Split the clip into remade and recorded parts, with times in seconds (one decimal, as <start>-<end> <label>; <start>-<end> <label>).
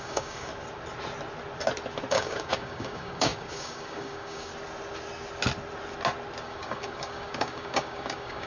0.0-0.5 remade; 0.5-2.1 recorded; 2.1-4.5 remade; 4.5-6.4 recorded; 6.4-8.5 remade